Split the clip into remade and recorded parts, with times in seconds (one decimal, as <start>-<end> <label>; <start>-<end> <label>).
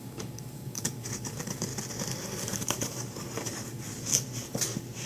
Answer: 0.0-1.7 remade; 1.7-2.4 recorded; 2.4-4.1 remade; 4.1-5.1 recorded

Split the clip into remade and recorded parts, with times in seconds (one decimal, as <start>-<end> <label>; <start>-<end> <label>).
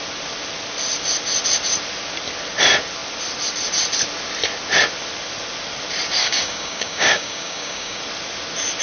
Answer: 0.0-6.2 recorded; 6.2-8.0 remade; 8.0-8.8 recorded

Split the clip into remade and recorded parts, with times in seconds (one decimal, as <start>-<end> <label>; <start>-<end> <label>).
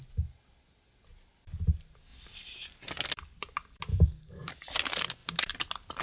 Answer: 0.0-3.9 recorded; 3.9-4.5 remade; 4.5-6.0 recorded